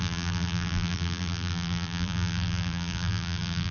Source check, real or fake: fake